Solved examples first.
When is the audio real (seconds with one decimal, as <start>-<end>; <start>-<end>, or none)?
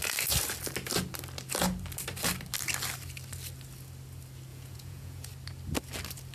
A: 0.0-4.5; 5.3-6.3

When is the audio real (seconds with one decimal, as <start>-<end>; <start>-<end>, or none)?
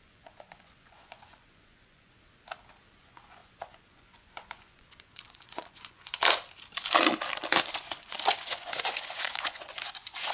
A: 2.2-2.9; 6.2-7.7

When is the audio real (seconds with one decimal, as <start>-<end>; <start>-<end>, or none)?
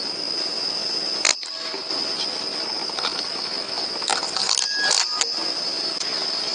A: 0.0-6.5